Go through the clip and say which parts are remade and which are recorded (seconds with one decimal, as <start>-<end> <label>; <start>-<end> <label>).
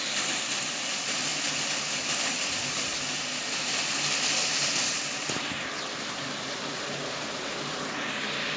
0.0-8.6 recorded